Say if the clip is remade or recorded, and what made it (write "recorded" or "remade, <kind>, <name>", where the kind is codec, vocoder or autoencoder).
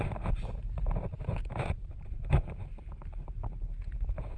remade, vocoder, BigVGAN v2